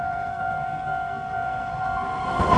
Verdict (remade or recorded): remade